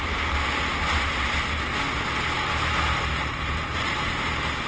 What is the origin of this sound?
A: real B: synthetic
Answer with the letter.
A